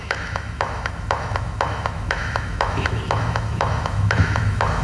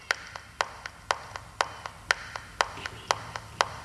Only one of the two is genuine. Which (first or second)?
second